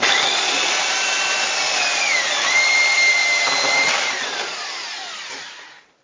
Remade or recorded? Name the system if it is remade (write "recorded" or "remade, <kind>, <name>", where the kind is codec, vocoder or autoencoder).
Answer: remade, vocoder, BigVGAN v2